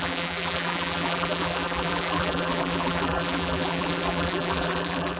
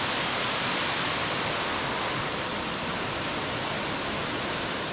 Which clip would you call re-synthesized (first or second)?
first